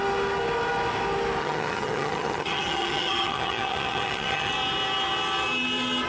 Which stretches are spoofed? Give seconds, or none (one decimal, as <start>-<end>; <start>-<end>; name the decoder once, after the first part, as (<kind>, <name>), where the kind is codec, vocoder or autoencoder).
1.4-4.5 (vocoder, HiFi-GAN)